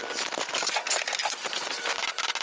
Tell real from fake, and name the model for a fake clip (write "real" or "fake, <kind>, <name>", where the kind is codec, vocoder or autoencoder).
real